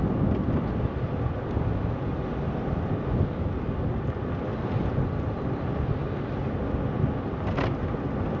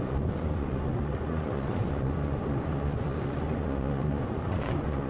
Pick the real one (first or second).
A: first